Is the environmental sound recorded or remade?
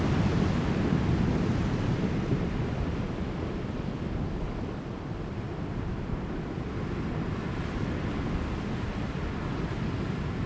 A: recorded